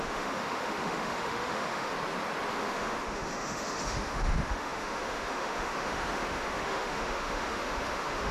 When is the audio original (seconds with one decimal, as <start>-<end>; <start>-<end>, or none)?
1.9-2.5